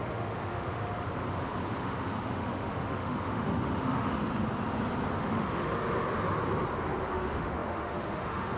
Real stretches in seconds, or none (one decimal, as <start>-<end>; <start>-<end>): 0.8-1.7; 4.3-5.1; 5.8-7.1